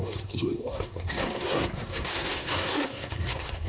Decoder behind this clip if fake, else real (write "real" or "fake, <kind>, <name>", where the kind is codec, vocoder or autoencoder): fake, codec, SNAC